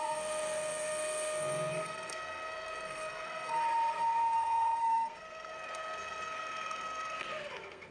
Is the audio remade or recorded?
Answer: remade